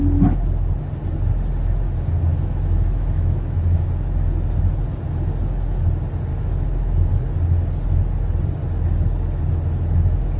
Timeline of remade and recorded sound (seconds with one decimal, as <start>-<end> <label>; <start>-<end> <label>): 0.0-2.3 recorded; 2.3-3.9 remade; 3.9-6.3 recorded; 6.3-7.1 remade; 7.1-10.4 recorded